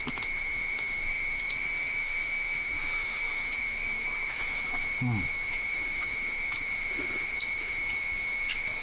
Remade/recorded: remade